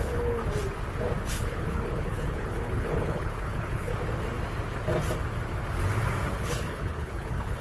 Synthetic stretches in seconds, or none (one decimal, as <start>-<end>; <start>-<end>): 0.0-0.4; 1.3-3.9; 6.3-7.6